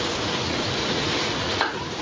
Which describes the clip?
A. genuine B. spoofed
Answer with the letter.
B